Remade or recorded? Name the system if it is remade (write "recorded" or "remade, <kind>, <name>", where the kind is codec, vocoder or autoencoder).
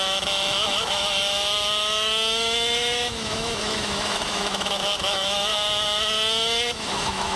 remade, autoencoder, DAC-VAE